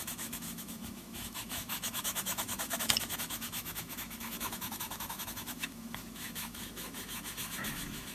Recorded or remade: remade